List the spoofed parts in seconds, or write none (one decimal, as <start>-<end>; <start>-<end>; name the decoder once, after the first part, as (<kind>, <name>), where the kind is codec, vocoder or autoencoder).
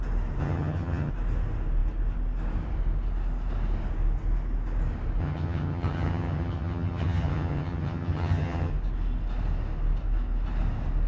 0.4-1.1 (vocoder, HiFi-GAN); 5.2-8.7